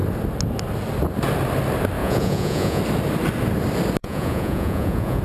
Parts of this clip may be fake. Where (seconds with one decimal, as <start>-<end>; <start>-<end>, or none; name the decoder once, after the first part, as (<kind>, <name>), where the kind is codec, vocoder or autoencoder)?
2.0-2.8 (vocoder, Vocos); 4.0-5.2